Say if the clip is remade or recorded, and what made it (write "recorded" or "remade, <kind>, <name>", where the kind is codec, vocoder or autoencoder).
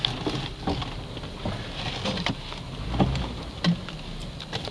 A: recorded